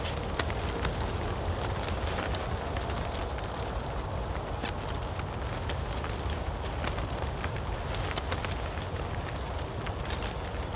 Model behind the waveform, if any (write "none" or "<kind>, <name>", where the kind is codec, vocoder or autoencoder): none